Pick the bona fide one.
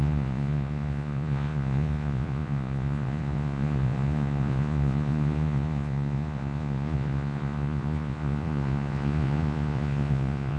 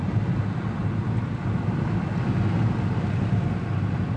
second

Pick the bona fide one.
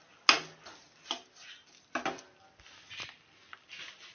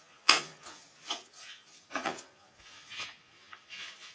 first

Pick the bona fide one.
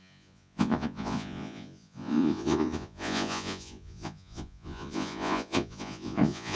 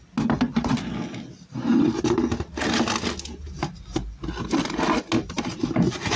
second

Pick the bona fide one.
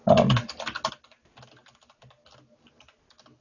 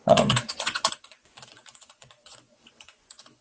first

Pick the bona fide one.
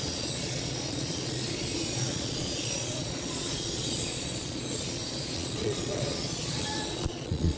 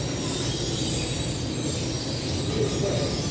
second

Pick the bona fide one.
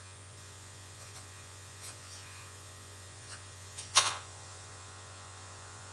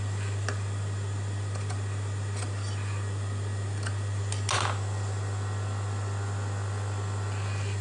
second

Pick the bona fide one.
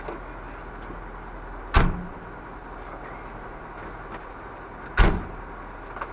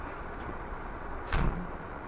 first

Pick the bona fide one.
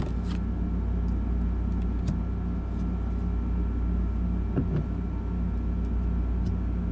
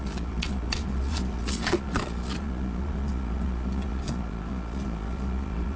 first